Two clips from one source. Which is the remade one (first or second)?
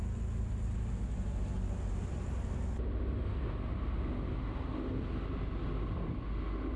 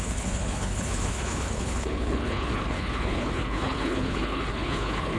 second